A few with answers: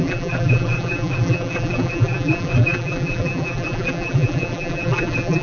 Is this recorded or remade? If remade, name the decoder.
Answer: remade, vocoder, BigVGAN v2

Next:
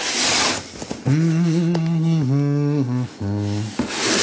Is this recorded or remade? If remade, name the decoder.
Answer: recorded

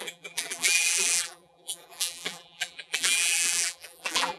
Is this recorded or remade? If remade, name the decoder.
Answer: remade, vocoder, BigVGAN v2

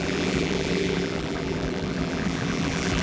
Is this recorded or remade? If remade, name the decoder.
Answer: remade, vocoder, BigVGAN v2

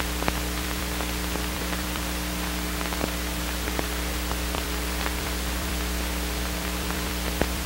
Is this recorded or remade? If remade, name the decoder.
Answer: remade, vocoder, BigVGAN v2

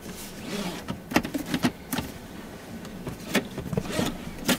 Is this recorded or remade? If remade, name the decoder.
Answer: remade, vocoder, BigVGAN v2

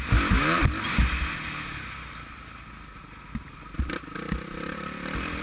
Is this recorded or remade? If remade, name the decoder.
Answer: recorded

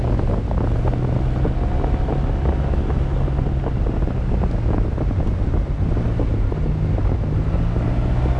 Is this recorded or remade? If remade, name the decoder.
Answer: recorded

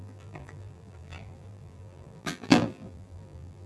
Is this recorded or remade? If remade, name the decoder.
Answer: remade, vocoder, BigVGAN v2